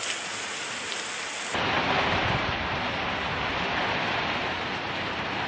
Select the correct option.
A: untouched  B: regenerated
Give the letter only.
A